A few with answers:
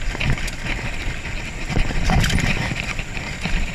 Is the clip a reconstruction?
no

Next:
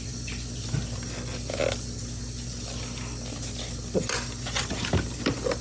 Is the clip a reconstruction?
no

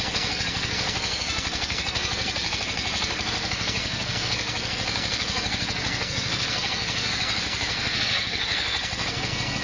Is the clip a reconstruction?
yes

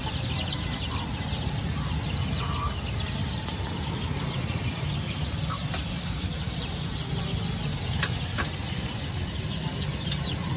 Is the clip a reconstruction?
no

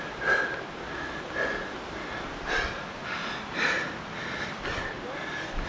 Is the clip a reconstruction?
no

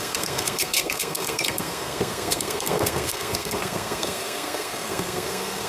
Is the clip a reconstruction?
yes